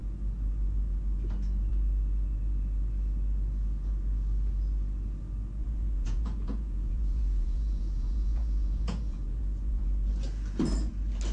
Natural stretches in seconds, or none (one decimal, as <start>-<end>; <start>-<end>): 0.0-5.6; 10.1-11.3